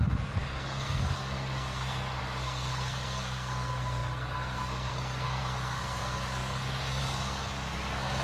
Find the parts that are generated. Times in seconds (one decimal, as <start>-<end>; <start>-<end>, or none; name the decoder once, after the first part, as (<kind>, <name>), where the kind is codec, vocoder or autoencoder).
0.0-8.2 (codec, SNAC)